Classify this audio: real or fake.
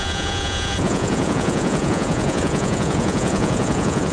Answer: fake